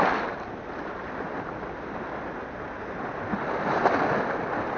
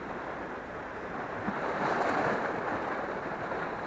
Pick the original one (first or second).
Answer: first